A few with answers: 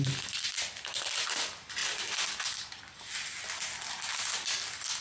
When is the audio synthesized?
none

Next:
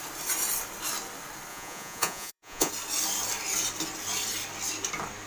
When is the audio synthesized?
1.5-2.7

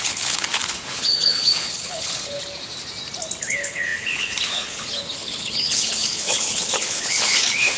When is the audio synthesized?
0.0-2.4; 3.4-7.8

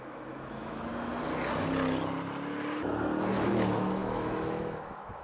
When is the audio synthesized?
0.0-0.9; 3.3-5.2

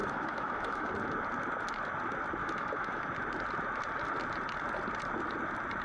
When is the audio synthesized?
0.0-0.9; 2.4-3.0

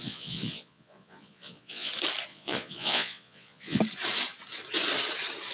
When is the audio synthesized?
0.0-1.9; 2.3-3.8

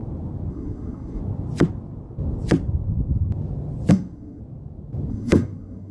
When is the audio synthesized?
0.5-1.2; 3.9-4.4; 5.1-5.9

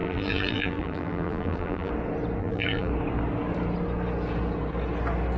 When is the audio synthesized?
0.0-1.9; 2.4-2.9